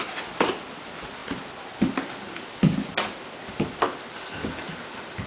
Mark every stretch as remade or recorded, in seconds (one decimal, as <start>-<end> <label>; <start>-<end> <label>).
0.0-5.3 recorded